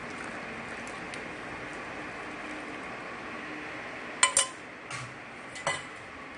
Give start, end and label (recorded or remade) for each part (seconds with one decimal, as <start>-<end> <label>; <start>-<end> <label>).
0.0-6.4 recorded